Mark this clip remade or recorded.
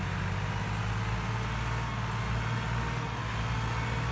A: recorded